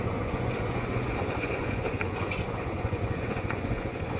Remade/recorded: remade